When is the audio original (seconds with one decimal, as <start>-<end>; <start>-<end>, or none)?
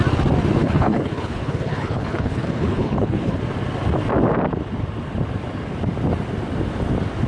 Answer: 0.0-0.6; 3.4-7.3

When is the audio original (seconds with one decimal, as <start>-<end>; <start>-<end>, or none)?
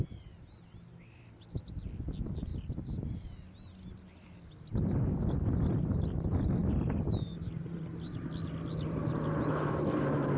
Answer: 0.0-2.5; 3.1-6.6; 8.3-10.4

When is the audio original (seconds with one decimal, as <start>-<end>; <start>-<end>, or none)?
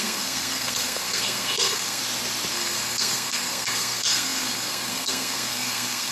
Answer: 2.0-2.5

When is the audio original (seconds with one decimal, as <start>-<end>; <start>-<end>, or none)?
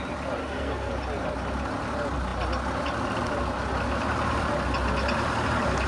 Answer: 0.0-0.4; 0.9-5.9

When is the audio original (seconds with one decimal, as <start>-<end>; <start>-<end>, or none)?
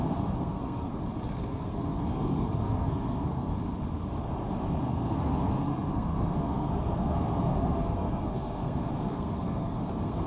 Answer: 0.9-1.5; 3.5-4.8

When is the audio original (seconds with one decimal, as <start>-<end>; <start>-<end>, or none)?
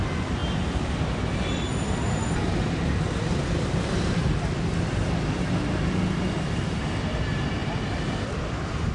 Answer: 0.0-8.9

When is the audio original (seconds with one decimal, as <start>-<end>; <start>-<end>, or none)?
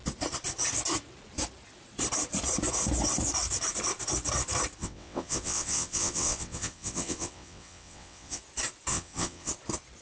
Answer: 0.0-4.8; 8.4-8.9; 9.5-10.0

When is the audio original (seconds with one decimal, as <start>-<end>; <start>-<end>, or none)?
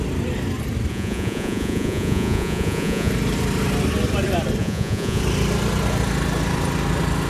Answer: 0.0-0.9; 3.1-4.6; 5.2-7.3